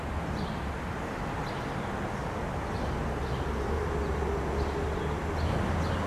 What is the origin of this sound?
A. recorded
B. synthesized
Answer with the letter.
A